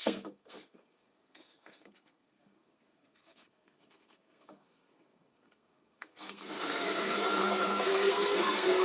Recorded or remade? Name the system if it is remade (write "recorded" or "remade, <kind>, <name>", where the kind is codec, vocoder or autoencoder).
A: remade, codec, SNAC